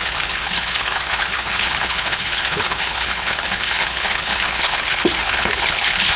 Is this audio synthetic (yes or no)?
yes